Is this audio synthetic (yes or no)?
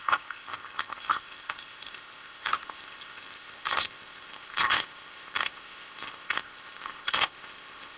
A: yes